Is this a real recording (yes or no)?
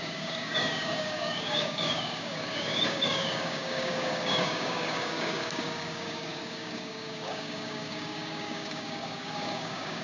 no